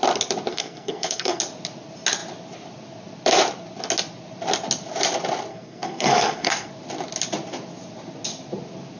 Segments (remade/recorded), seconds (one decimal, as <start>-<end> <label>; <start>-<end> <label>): 0.0-0.5 recorded; 0.5-1.4 remade; 1.4-5.5 recorded; 5.5-6.7 remade; 6.7-9.0 recorded